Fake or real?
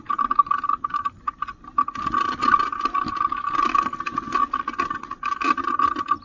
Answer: real